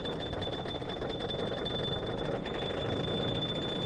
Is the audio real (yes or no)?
yes